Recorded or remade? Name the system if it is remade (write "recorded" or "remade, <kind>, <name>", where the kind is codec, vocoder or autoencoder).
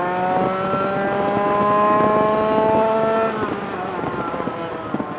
recorded